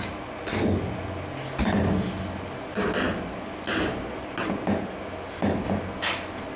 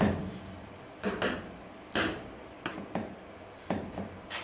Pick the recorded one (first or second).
first